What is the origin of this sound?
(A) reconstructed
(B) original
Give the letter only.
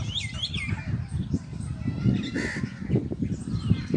B